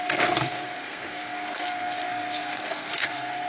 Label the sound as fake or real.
fake